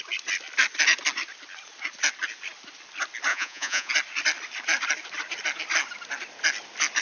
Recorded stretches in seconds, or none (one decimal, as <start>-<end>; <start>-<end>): 0.0-3.3; 3.9-7.0